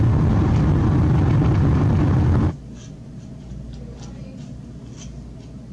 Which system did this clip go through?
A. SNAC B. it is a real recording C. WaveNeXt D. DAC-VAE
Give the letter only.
B